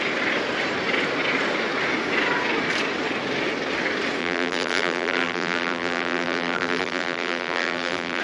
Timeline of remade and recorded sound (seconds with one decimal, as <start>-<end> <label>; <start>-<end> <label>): 0.0-4.2 recorded; 4.2-8.2 remade